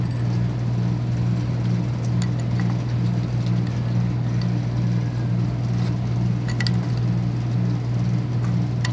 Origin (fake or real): real